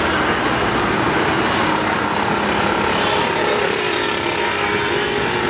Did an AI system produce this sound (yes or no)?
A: no